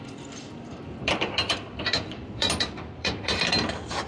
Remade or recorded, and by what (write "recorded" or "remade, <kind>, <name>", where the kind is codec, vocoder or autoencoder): remade, vocoder, BigVGAN v2